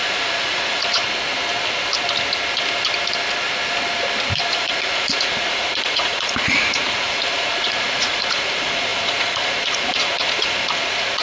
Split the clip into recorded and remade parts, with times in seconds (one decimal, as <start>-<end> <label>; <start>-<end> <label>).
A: 0.0-1.0 remade; 1.0-4.5 recorded; 4.5-11.2 remade